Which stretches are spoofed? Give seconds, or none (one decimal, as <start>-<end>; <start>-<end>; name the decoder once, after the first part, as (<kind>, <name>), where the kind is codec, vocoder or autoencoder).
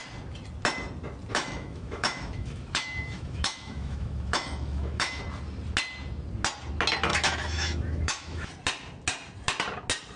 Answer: 1.3-5.2 (autoencoder, DAC-VAE); 7.1-8.5